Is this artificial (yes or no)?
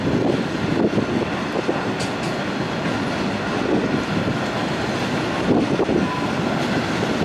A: no